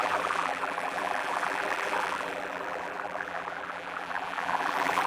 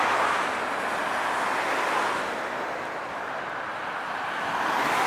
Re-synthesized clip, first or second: first